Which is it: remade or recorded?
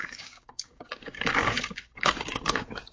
remade